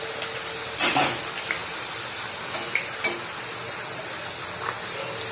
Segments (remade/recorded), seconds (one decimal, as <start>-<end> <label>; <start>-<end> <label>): 0.0-5.3 recorded